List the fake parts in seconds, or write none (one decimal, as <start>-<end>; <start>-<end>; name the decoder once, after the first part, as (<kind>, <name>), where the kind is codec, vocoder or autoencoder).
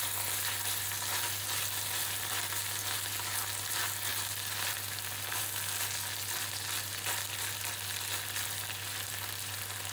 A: none